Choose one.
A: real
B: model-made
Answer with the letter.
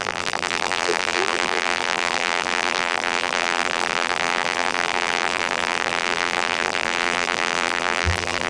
B